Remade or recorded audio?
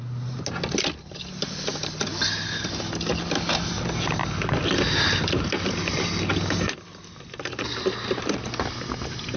recorded